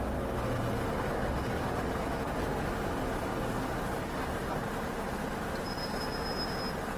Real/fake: real